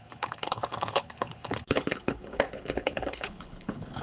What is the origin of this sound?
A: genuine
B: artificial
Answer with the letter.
B